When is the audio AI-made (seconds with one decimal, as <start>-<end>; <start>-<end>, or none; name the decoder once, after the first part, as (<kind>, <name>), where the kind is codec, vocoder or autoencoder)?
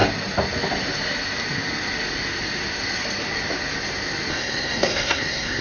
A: 4.3-5.6 (codec, SNAC)